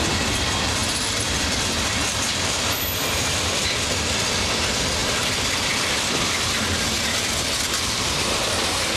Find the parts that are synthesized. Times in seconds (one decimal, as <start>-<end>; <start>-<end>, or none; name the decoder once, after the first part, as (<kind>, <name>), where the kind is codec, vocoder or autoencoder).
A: 0.8-3.7 (vocoder, BigVGAN v2); 5.0-6.0